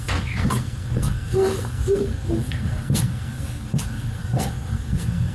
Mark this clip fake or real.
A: fake